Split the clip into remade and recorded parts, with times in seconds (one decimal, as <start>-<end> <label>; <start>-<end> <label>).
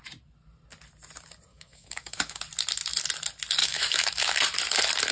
0.0-1.5 recorded; 1.5-2.4 remade; 2.4-3.6 recorded; 3.6-4.4 remade; 4.4-5.1 recorded